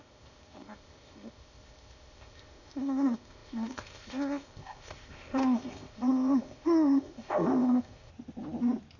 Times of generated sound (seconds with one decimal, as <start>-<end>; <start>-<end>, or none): 0.0-8.1

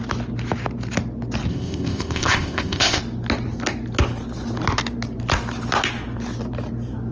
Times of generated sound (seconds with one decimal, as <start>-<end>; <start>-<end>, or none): 1.5-3.0

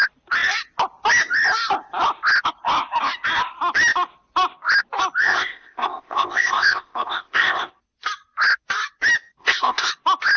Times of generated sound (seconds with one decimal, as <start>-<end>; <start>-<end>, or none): 5.2-7.7; 9.4-9.9

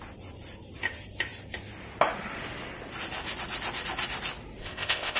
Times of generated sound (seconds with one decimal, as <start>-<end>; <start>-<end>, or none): 4.6-5.2

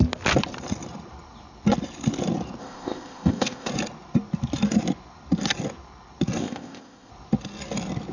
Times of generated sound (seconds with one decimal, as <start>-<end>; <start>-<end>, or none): 2.6-3.7; 6.4-7.1

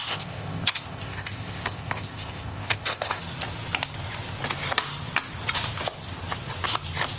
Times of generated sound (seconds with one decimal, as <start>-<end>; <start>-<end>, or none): 0.0-3.2